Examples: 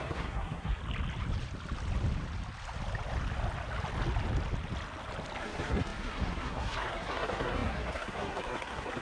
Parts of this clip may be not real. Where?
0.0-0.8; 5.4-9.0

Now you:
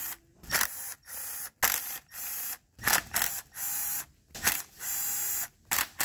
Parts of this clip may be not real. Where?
0.0-0.9; 4.5-6.0